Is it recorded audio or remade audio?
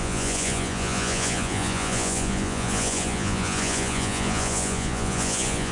remade